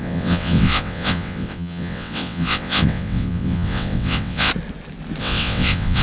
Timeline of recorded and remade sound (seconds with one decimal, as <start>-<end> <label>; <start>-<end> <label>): 0.0-4.5 remade; 4.5-5.2 recorded; 5.2-6.0 remade